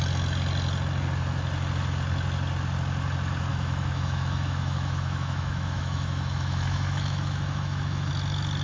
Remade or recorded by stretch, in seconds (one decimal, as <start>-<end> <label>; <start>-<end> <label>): 0.0-3.5 recorded; 3.5-8.1 remade; 8.1-8.6 recorded